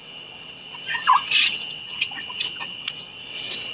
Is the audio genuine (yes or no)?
no